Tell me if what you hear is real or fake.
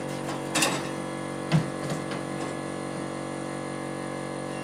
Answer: real